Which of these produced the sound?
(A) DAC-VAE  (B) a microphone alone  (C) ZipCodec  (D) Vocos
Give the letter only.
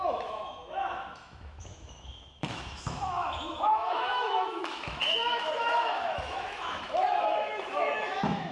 A